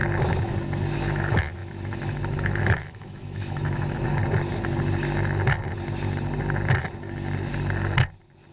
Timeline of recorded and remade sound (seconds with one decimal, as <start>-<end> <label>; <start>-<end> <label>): 0.0-1.1 recorded; 1.1-4.2 remade; 4.2-8.5 recorded